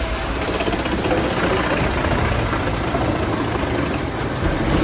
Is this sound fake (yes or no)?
no